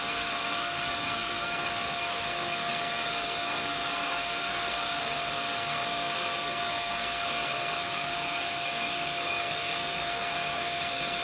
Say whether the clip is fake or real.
fake